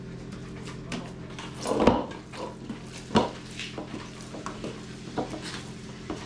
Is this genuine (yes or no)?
yes